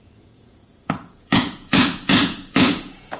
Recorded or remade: remade